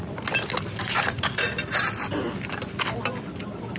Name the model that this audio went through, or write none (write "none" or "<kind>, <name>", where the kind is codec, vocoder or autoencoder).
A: vocoder, BigVGAN v2